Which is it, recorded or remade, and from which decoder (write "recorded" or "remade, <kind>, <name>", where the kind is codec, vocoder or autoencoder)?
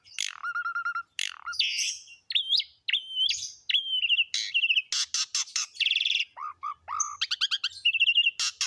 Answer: recorded